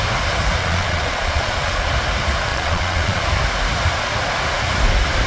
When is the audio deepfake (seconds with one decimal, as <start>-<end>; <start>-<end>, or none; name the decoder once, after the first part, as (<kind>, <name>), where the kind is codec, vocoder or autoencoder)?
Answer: 0.6-1.9 (vocoder, Vocos); 2.5-3.2